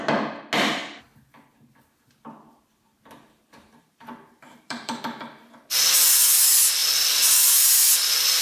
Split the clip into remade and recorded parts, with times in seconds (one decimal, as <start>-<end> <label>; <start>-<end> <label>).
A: 0.0-3.6 recorded; 3.6-5.0 remade; 5.0-8.4 recorded